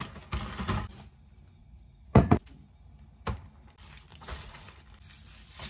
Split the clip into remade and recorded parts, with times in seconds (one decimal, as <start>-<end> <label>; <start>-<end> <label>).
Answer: 0.0-1.6 recorded; 1.6-2.5 remade; 2.5-4.1 recorded; 4.1-4.8 remade; 4.8-5.7 recorded